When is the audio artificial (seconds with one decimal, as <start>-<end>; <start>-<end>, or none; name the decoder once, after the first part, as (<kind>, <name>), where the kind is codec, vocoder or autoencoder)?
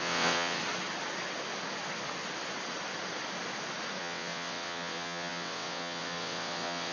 0.0-0.6 (vocoder, WaveNeXt); 4.0-6.9